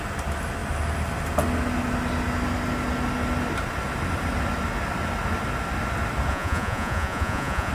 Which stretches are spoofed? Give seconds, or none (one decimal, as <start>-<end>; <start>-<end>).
6.3-7.7